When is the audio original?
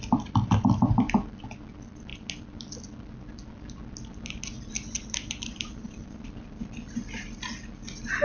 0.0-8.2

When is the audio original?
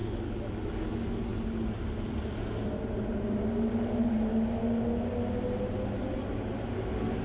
0.0-7.2